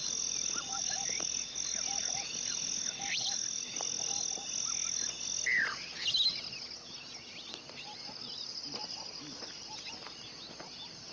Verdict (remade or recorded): recorded